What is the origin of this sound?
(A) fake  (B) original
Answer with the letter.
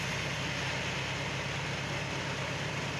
B